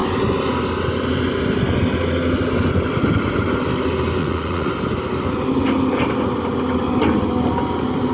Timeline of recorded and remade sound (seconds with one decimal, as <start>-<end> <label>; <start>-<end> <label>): 0.0-4.2 recorded; 4.2-4.7 remade; 4.7-8.1 recorded